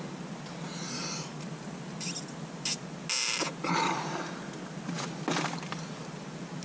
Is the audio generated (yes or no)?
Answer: no